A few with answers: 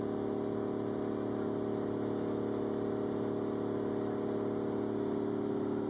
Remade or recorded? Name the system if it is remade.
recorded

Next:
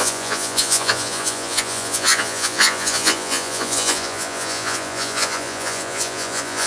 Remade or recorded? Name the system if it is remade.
remade, vocoder, Vocos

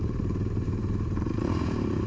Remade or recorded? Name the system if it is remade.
remade, vocoder, BigVGAN v2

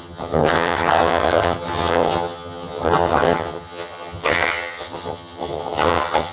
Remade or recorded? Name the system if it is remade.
remade, vocoder, HiFi-GAN